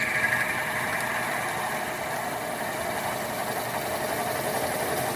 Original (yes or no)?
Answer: yes